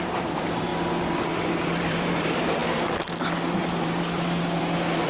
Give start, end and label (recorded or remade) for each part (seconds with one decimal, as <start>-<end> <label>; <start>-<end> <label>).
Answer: 0.0-0.7 remade; 0.7-1.3 recorded; 1.3-2.6 remade; 2.6-3.5 recorded; 3.5-5.1 remade